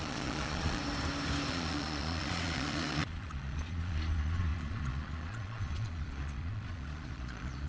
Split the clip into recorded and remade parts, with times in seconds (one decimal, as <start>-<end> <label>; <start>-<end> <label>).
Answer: 0.0-0.8 remade; 0.8-1.5 recorded; 1.5-7.7 remade